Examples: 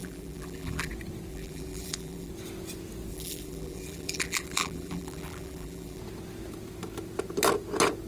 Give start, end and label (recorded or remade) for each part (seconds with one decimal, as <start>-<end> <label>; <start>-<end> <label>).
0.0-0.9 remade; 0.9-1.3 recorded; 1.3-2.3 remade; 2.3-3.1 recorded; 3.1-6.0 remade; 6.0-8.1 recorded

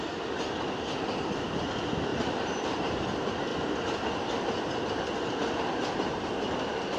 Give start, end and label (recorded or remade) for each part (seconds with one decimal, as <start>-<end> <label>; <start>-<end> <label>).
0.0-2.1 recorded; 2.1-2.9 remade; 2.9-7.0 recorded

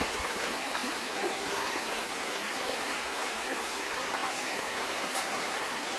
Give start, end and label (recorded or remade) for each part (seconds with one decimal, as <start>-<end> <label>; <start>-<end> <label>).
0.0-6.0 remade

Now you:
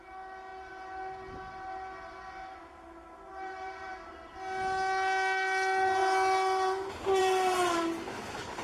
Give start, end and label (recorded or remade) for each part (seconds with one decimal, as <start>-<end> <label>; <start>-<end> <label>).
0.0-3.3 recorded; 3.3-3.9 remade; 3.9-8.6 recorded